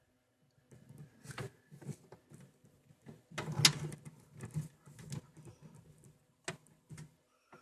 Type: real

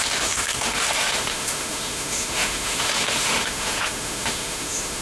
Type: fake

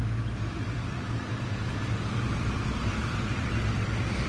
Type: fake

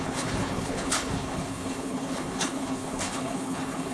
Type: fake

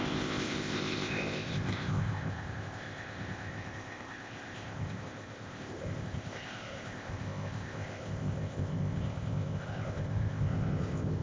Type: fake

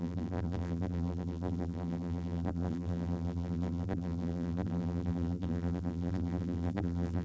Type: fake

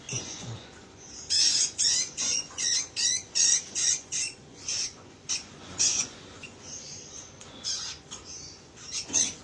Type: fake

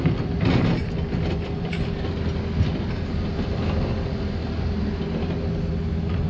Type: real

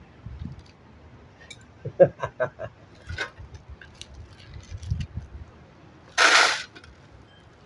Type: real